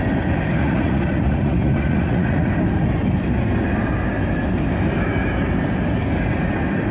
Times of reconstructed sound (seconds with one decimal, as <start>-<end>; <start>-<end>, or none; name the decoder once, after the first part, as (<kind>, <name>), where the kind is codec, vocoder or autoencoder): 0.6-2.5 (vocoder, Vocos)